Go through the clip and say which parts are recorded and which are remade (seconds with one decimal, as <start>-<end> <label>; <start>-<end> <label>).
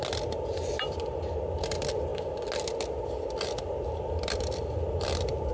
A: 0.0-5.5 recorded